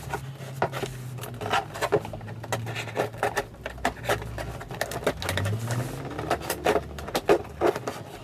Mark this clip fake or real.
real